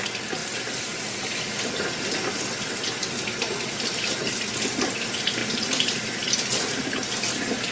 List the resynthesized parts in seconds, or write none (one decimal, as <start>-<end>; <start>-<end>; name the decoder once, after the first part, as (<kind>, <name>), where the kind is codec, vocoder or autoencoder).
none